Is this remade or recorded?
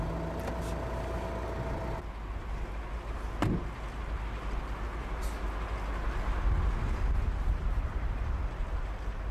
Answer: recorded